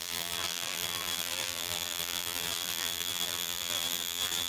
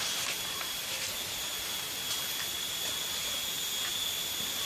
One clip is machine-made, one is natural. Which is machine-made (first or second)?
first